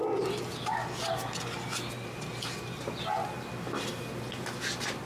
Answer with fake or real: real